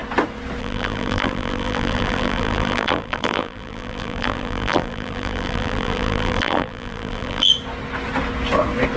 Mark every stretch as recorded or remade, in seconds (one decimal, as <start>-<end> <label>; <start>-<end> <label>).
0.0-0.6 recorded; 0.6-7.5 remade; 7.5-9.0 recorded